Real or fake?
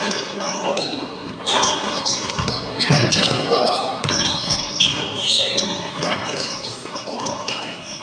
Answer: fake